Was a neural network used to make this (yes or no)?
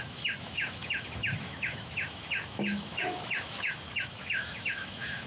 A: yes